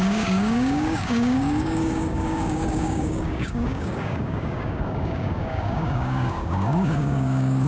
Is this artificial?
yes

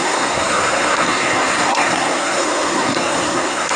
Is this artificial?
yes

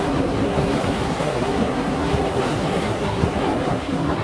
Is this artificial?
yes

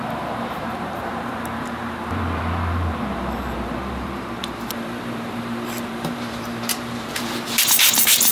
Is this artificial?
yes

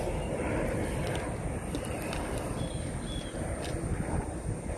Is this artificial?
no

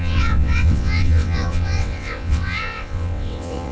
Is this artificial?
yes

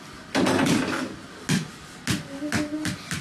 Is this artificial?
no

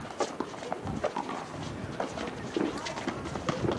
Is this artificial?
no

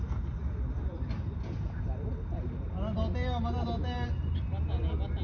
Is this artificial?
no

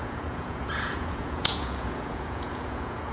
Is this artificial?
yes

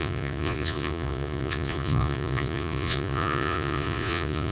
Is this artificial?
yes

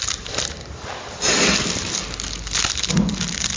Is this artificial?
no